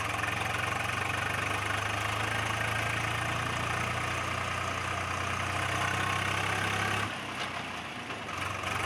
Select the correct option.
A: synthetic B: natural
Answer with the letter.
B